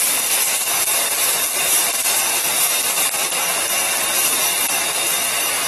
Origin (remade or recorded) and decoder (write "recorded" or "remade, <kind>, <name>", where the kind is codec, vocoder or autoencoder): recorded